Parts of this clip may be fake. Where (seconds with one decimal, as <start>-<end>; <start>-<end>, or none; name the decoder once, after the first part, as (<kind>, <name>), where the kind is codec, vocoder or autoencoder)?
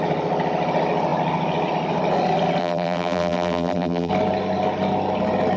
2.6-4.1 (vocoder, BigVGAN v2)